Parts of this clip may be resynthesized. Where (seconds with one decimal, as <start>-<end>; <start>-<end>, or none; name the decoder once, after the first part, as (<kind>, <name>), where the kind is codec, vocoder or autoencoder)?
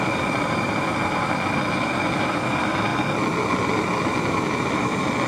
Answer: none